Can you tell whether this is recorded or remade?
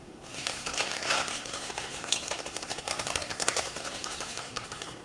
remade